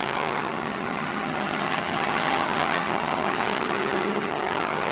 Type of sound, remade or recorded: remade